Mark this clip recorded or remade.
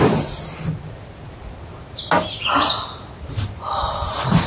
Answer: recorded